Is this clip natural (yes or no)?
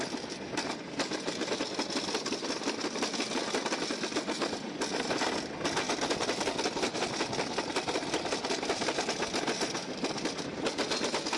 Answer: yes